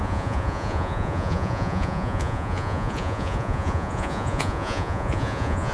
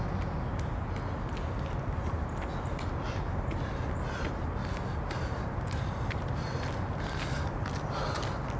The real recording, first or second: second